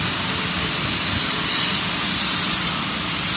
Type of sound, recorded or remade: remade